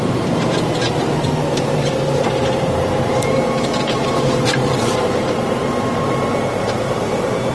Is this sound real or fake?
fake